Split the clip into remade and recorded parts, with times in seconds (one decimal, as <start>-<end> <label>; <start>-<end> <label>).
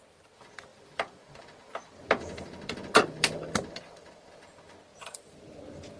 0.0-0.7 recorded; 0.7-4.3 remade; 4.3-4.9 recorded; 4.9-5.6 remade; 5.6-6.0 recorded